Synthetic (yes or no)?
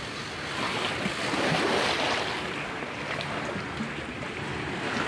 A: no